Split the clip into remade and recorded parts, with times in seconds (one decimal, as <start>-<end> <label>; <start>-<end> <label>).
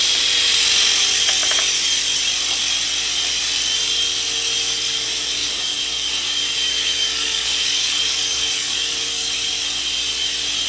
0.0-5.4 recorded; 5.4-6.1 remade; 6.1-6.7 recorded; 6.7-9.4 remade; 9.4-10.7 recorded